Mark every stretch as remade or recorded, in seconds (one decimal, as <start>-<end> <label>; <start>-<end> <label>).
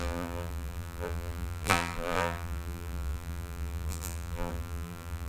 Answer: 0.0-5.3 remade